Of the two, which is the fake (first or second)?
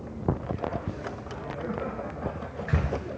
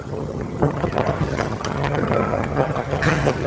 second